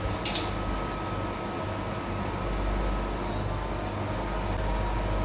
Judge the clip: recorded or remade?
recorded